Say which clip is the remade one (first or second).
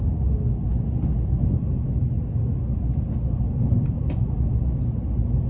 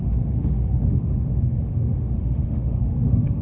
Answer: second